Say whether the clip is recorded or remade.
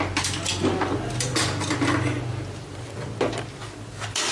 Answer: recorded